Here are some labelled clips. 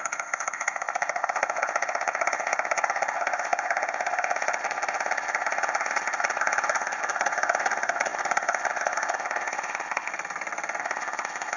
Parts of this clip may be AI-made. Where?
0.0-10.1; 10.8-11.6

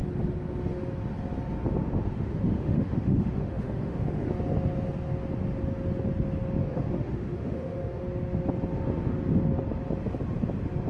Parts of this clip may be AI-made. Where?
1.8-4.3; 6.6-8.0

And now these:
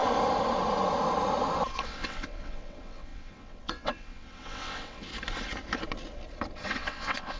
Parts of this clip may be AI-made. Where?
1.7-5.1; 6.7-7.4